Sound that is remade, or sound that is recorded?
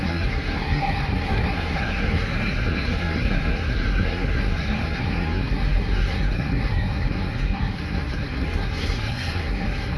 remade